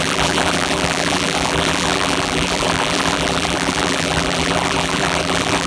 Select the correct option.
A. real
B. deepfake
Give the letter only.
B